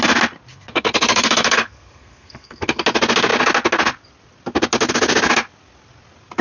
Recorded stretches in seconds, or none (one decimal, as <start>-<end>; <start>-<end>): 0.0-0.5; 2.8-6.4